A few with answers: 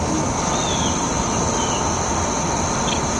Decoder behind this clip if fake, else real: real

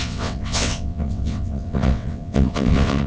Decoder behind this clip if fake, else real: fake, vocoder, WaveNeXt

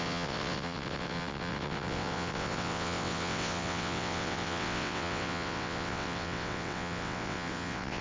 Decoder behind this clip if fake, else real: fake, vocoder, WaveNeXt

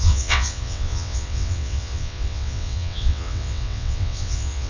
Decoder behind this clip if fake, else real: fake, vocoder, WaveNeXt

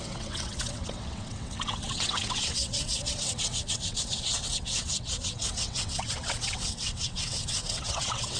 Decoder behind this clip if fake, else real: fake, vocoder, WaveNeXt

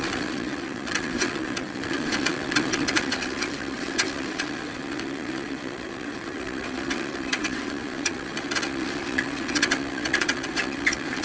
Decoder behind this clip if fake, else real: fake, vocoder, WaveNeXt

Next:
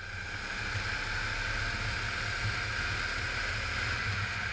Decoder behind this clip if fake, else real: real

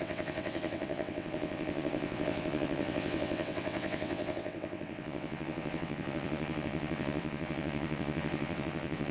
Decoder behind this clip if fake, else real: fake, vocoder, WaveNeXt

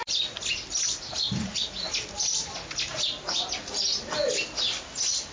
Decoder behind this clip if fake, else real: real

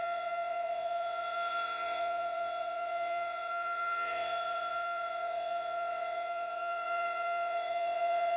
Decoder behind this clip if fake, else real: fake, vocoder, WaveNeXt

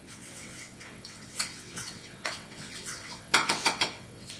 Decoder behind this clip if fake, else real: fake, vocoder, WaveNeXt